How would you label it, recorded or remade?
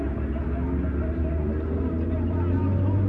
recorded